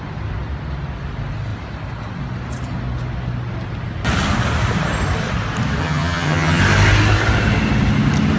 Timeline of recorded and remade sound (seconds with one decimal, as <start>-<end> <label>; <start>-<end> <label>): 0.0-5.8 recorded; 5.8-6.6 remade; 6.6-8.4 recorded